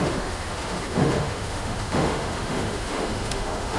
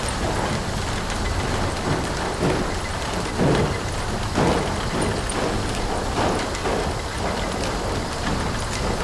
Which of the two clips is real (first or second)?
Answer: second